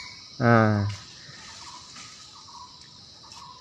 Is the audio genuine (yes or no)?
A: yes